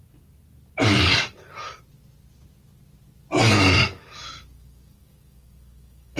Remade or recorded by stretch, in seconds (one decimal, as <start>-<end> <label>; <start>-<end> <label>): 0.0-1.1 recorded; 1.1-1.8 remade; 1.8-3.8 recorded; 3.8-6.2 remade